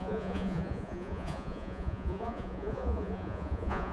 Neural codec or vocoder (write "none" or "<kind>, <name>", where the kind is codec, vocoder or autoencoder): vocoder, Vocos